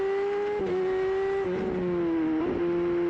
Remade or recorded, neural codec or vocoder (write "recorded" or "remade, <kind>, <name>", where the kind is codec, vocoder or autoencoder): recorded